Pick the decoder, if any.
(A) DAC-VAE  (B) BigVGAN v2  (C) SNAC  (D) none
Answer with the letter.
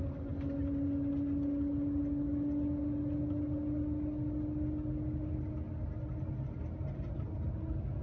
D